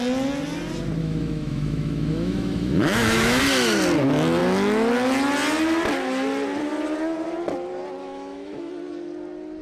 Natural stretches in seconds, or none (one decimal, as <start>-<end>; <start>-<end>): 0.0-1.0; 3.4-8.0; 8.7-9.6